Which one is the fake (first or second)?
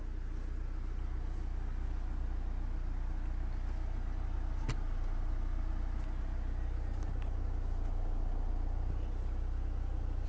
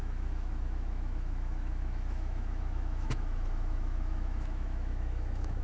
second